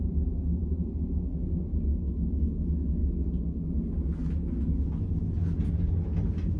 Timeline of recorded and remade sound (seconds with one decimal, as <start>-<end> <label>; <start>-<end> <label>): 0.0-6.6 recorded